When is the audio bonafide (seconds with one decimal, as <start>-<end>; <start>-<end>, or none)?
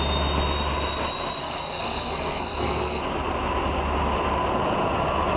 0.0-1.4; 3.0-5.4